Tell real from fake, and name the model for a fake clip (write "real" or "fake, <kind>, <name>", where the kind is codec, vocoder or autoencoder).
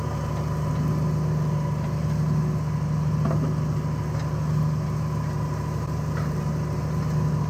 real